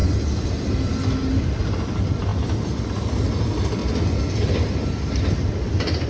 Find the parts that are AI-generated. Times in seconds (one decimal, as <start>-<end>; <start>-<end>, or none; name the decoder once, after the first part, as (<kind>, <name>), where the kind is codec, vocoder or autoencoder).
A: 0.5-3.8 (vocoder, BigVGAN v2); 4.4-6.1